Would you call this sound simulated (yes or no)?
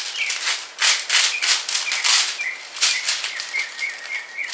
no